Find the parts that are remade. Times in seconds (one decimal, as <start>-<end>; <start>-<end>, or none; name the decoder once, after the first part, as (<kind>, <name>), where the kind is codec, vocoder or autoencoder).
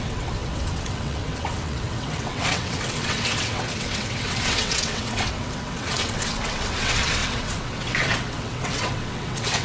0.0-9.6 (vocoder, WaveNeXt)